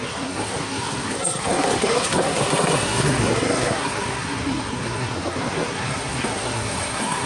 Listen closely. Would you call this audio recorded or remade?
remade